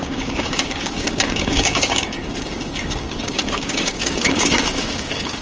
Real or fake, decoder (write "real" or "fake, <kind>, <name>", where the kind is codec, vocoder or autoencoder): fake, codec, DAC